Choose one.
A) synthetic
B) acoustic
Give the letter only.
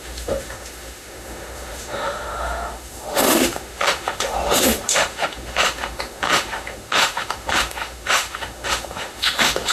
A